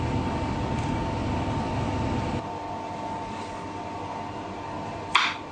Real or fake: real